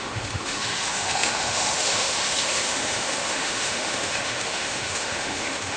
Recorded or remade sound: remade